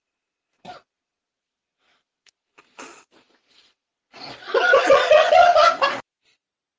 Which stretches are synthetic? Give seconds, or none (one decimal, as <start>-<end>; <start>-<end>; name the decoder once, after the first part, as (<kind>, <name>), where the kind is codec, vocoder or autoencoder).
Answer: 0.0-5.4 (vocoder, Vocos)